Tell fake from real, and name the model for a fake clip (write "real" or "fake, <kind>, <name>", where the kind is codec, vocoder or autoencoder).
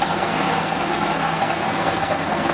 fake, codec, SNAC